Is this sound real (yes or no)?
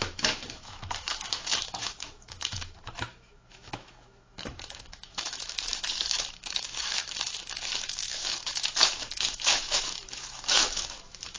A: no